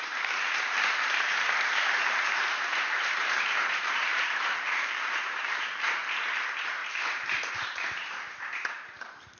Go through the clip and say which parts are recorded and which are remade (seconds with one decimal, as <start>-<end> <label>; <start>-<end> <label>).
0.0-6.8 remade; 6.8-7.5 recorded; 7.5-9.4 remade